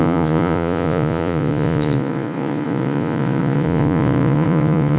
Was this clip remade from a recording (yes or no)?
yes